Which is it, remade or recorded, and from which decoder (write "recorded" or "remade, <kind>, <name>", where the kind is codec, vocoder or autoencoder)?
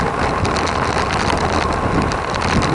recorded